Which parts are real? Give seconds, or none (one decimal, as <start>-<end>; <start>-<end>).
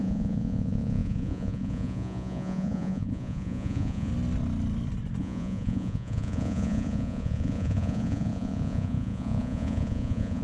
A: 4.1-5.2